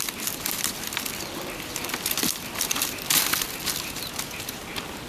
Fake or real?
real